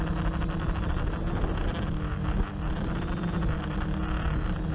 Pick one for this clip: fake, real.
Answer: real